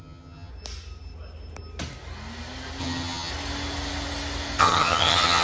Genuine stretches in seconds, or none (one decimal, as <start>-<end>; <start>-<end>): 0.5-2.8; 3.3-4.6